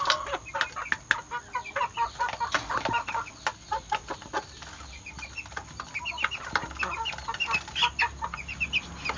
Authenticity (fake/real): real